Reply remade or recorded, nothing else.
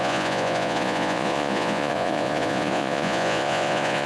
remade